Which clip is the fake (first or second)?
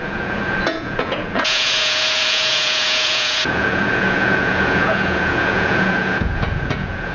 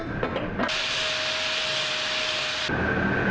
first